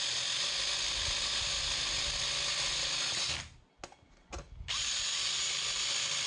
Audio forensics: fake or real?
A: real